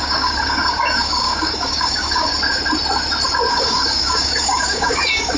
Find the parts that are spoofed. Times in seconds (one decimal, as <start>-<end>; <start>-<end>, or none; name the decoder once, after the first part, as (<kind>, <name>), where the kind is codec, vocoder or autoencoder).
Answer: 0.0-2.3 (codec, DAC); 3.5-5.4